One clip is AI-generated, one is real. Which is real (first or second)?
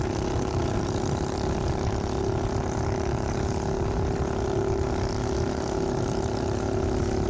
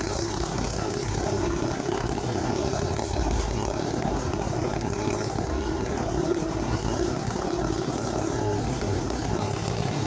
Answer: first